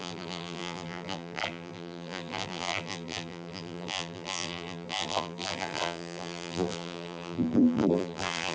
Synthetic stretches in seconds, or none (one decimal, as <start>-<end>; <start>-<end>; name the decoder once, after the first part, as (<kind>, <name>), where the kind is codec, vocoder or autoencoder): 0.0-8.5 (vocoder, BigVGAN v2)

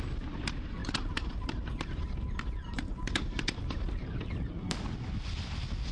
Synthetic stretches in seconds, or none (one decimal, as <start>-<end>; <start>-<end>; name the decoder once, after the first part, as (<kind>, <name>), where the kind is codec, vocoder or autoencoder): 0.8-4.3 (vocoder, BigVGAN v2)